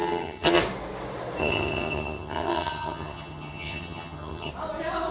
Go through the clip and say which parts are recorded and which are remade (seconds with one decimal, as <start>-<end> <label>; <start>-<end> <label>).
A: 0.0-0.6 remade; 0.6-1.4 recorded; 1.4-4.5 remade; 4.5-5.1 recorded